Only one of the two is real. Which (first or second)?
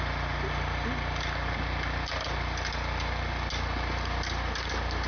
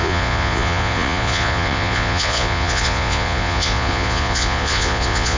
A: first